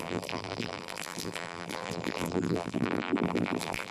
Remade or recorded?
remade